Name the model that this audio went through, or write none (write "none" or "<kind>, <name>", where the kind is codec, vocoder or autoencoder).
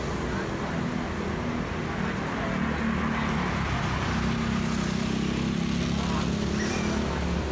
none